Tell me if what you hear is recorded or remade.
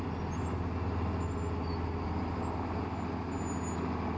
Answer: recorded